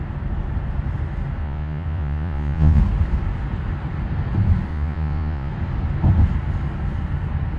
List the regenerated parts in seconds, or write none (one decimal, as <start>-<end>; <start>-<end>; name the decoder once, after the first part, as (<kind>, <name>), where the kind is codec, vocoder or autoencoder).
1.4-2.8 (vocoder, Vocos); 4.7-5.5